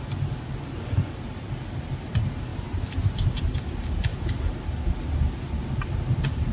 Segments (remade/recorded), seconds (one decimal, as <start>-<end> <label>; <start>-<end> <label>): 0.0-2.5 recorded; 2.5-3.4 remade; 3.4-6.5 recorded